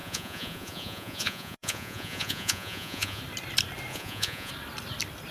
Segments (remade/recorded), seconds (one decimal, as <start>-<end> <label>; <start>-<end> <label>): 0.0-3.2 remade; 3.2-3.9 recorded; 3.9-4.5 remade; 4.5-5.3 recorded